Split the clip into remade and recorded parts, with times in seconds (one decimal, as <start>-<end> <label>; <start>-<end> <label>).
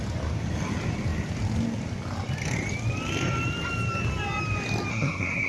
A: 0.0-4.9 recorded; 4.9-5.5 remade